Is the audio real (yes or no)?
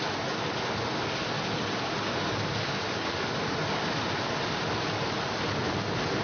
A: yes